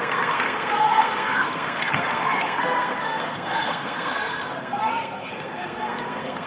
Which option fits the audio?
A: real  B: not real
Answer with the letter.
B